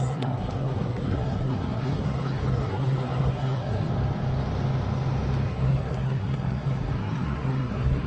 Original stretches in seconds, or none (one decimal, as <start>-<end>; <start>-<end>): 3.9-5.5